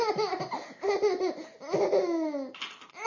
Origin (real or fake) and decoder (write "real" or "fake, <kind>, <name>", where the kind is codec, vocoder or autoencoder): real